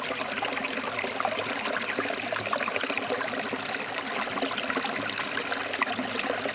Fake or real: real